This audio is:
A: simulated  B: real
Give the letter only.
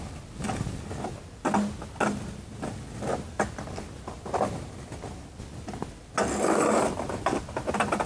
B